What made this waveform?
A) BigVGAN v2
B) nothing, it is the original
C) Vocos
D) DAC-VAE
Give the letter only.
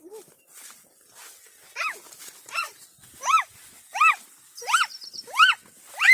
B